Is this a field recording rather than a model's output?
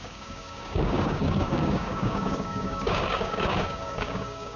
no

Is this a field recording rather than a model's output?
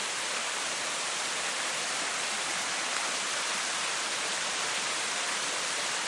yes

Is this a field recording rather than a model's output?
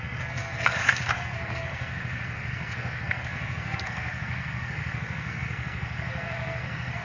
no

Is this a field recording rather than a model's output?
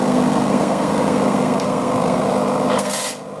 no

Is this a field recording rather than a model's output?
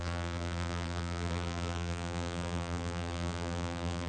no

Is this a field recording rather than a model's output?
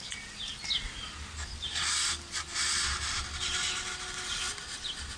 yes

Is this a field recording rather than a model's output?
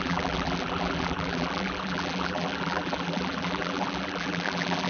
no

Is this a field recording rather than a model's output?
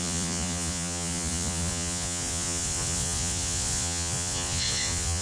no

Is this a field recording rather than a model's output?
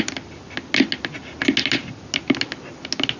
yes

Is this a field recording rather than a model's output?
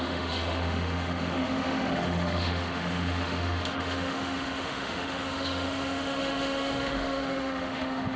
no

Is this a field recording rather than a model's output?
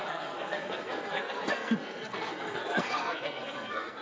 no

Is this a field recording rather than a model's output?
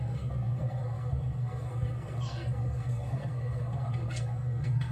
no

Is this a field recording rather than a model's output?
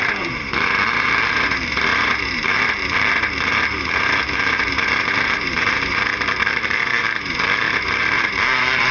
no